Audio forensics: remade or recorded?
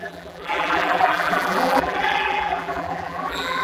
remade